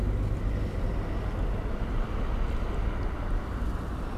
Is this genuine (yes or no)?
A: yes